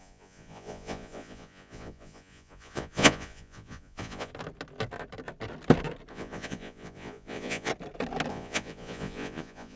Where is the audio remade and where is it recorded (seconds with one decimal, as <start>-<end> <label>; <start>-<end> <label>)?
0.0-4.3 remade; 4.3-6.1 recorded; 6.1-7.7 remade; 7.7-8.3 recorded; 8.3-9.8 remade